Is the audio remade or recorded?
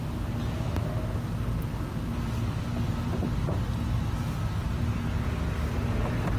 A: recorded